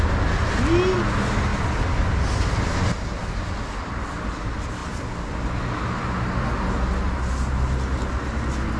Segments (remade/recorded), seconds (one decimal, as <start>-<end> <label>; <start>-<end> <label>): 0.0-8.8 recorded